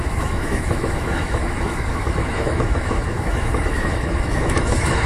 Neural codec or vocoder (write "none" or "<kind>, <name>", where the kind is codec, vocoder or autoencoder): autoencoder, DAC-VAE